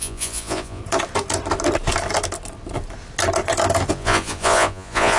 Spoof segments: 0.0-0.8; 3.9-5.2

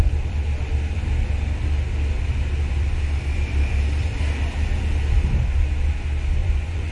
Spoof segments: 6.4-6.9

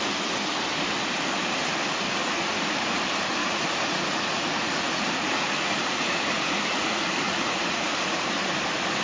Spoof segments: 2.2-3.0; 3.4-8.2

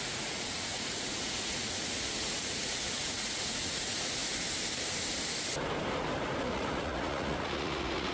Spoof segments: 0.0-4.2; 6.4-8.1

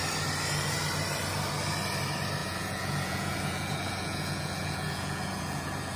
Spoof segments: 2.4-6.0

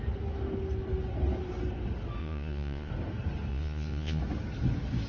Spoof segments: 2.2-2.9; 3.5-4.2

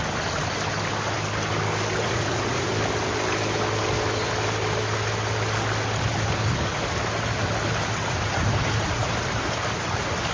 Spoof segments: 2.0-2.7; 7.8-9.1